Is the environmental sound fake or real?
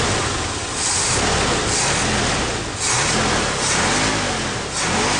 real